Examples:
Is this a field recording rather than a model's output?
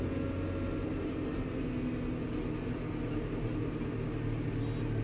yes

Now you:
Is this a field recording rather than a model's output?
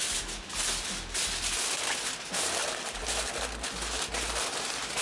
yes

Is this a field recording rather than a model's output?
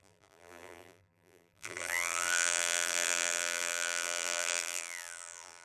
no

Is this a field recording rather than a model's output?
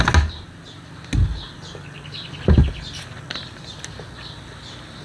yes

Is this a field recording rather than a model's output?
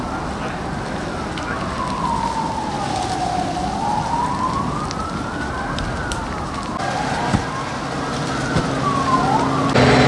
yes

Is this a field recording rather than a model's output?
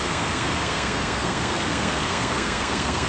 no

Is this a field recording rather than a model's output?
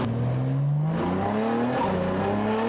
yes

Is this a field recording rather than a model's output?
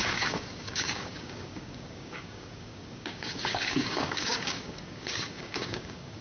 no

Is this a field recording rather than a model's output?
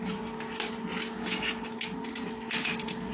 yes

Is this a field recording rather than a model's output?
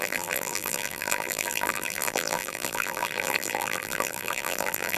no